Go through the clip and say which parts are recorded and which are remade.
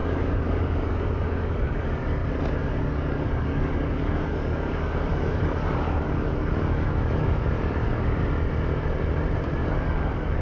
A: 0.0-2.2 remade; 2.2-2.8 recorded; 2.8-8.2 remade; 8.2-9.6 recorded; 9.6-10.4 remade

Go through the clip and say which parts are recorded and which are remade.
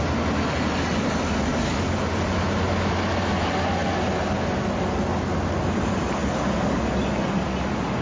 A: 0.0-8.0 recorded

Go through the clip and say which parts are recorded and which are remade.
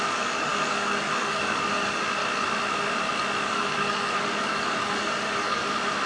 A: 0.0-2.2 remade; 2.2-3.4 recorded; 3.4-5.6 remade; 5.6-6.1 recorded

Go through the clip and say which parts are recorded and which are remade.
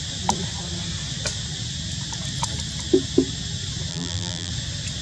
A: 0.0-3.9 recorded; 3.9-4.5 remade; 4.5-5.0 recorded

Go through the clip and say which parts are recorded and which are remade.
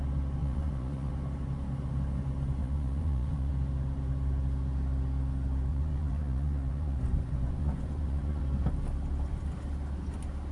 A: 0.0-0.4 recorded; 0.4-1.1 remade; 1.1-2.6 recorded; 2.6-3.5 remade; 3.5-5.7 recorded; 5.7-8.4 remade; 8.4-10.5 recorded